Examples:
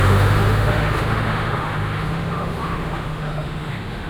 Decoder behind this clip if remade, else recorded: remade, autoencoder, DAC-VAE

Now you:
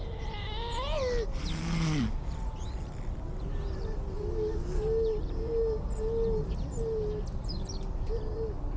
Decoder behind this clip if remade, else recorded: recorded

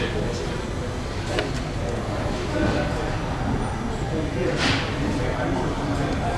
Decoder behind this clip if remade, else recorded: recorded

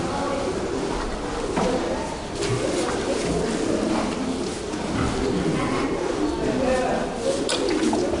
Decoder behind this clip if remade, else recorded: recorded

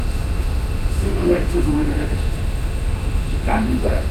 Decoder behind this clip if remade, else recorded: remade, autoencoder, DAC-VAE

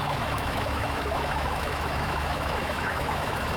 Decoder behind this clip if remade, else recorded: remade, autoencoder, DAC-VAE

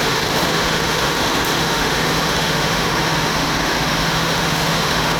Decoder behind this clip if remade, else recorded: remade, autoencoder, DAC-VAE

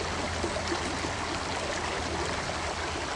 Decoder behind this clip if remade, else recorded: recorded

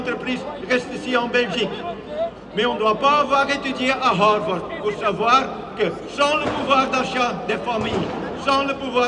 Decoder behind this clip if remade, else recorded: recorded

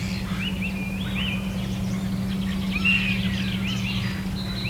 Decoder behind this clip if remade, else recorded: recorded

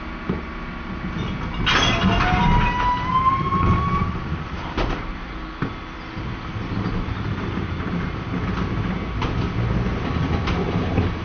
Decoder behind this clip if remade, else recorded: recorded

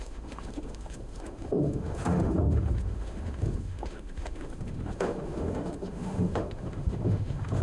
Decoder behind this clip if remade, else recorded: remade, autoencoder, DAC-VAE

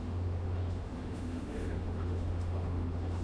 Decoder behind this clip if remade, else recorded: remade, autoencoder, DAC-VAE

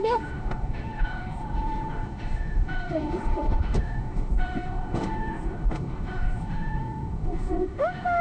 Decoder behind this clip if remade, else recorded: remade, autoencoder, DAC-VAE